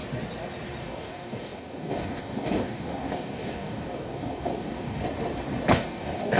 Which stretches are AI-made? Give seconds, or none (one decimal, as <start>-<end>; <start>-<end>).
0.8-5.0; 5.7-6.4